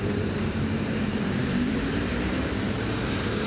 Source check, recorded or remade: remade